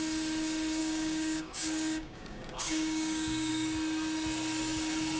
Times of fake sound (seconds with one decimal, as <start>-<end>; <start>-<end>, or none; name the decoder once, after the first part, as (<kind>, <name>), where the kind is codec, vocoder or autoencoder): 0.8-3.5 (codec, DAC)